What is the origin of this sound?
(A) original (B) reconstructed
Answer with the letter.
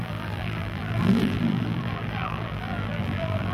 B